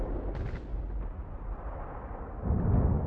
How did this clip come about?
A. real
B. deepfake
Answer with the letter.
A